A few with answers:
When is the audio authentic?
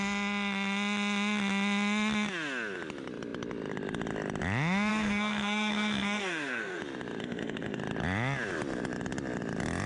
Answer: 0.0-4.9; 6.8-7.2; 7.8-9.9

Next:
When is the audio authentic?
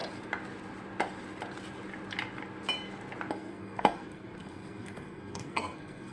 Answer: 0.0-3.3